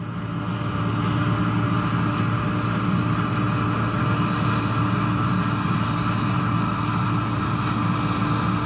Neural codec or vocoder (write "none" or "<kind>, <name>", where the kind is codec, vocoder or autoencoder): none